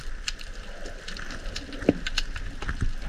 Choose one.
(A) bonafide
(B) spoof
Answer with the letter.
A